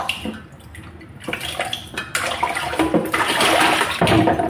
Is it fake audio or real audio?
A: real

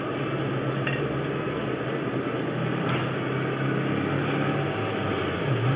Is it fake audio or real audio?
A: real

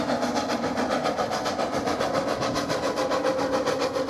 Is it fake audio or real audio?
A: real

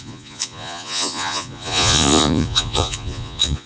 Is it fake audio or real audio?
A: fake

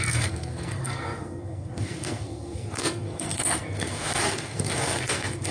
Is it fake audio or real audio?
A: fake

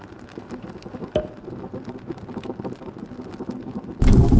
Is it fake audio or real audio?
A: real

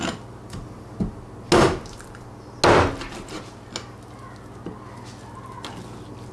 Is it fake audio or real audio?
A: real